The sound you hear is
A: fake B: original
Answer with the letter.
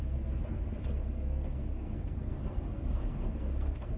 A